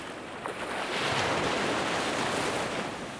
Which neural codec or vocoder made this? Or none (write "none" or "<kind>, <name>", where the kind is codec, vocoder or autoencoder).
none